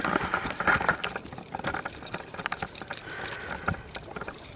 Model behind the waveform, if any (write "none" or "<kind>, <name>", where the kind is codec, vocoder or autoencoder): none